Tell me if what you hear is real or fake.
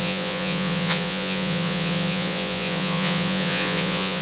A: fake